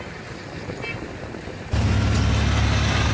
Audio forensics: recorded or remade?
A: recorded